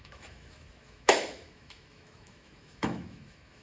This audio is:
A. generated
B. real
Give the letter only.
A